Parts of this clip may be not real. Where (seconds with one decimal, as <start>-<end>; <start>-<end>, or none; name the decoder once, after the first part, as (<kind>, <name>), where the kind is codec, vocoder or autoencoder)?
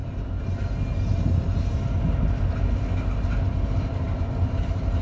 none